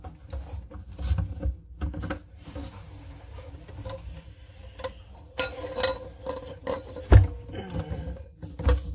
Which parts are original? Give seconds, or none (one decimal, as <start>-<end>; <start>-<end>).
0.0-8.9